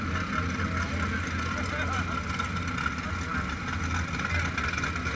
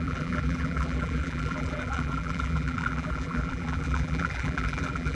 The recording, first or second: first